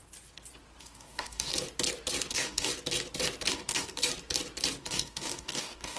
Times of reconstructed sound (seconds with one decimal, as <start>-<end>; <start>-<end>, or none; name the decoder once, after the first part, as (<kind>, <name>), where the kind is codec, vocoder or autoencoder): 0.8-1.5 (codec, DAC); 2.3-2.7; 3.5-4.1; 4.8-6.0